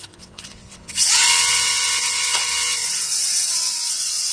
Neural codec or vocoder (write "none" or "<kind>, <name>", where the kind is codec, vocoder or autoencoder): vocoder, WaveNeXt